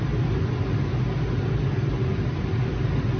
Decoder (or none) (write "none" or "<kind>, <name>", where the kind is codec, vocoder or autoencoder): none